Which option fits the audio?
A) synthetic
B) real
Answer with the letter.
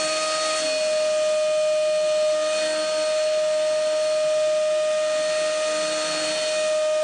B